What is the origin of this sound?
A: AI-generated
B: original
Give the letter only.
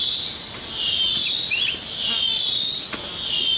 B